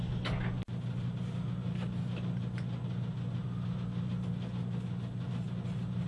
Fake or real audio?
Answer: real